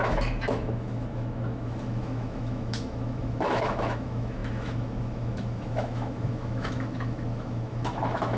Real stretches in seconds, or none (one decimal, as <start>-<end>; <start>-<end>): none